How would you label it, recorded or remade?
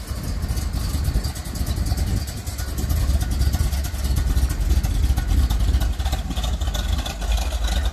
recorded